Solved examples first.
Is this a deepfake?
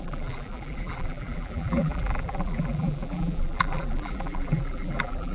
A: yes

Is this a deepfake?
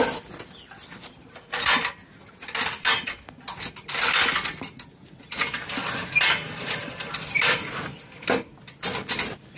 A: no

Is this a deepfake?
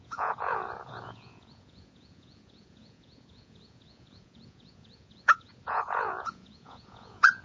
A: yes